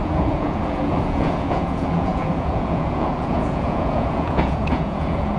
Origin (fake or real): fake